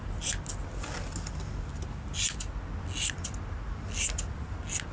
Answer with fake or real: real